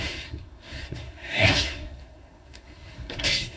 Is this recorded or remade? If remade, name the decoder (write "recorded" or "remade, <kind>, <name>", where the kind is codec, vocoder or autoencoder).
remade, codec, SNAC